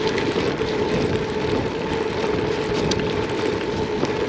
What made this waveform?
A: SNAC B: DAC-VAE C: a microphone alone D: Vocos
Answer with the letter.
C